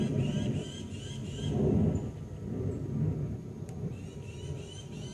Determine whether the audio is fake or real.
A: fake